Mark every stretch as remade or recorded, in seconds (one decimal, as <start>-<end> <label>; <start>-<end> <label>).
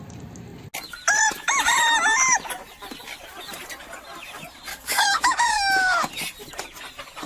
0.0-4.7 recorded; 4.7-6.1 remade; 6.1-7.3 recorded